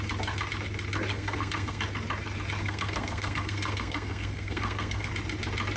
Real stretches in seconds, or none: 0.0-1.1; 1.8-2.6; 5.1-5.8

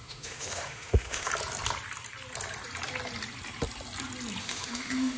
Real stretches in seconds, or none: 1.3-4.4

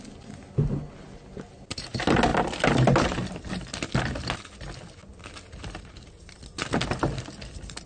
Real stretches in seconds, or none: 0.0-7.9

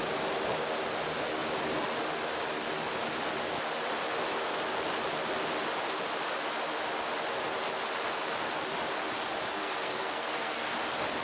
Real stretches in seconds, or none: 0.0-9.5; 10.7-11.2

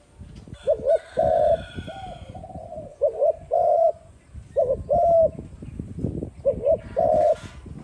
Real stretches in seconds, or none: 0.0-2.9; 4.2-7.8

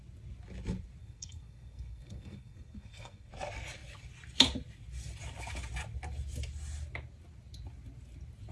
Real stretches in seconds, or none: 0.0-1.0; 3.3-8.5

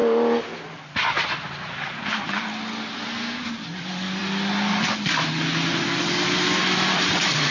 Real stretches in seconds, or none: 0.0-7.5

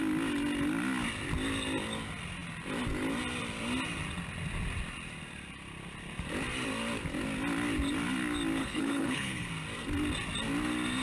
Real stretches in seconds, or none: 0.0-8.6; 9.5-11.0